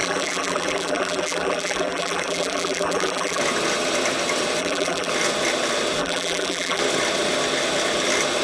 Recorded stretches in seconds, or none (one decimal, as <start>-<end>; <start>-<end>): 3.4-4.6; 5.1-6.0; 6.8-8.4